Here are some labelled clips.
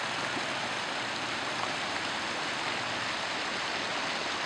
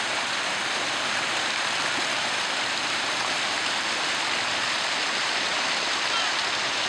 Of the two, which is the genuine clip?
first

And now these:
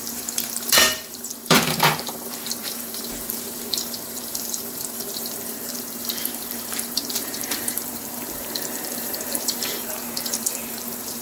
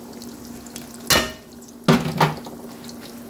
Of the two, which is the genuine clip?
second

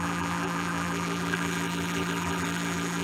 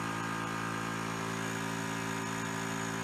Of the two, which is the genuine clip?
second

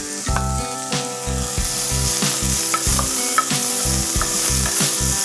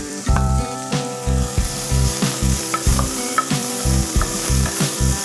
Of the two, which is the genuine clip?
first